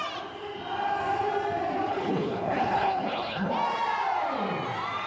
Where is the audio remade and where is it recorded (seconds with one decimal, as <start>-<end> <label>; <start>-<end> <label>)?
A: 0.0-1.9 recorded; 1.9-3.5 remade; 3.5-5.1 recorded